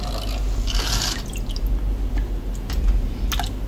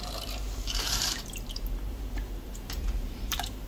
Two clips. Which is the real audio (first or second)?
first